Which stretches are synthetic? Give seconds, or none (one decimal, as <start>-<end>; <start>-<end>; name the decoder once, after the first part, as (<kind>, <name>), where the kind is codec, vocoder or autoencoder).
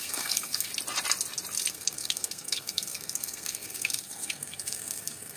0.0-0.7 (codec, SNAC); 1.7-5.4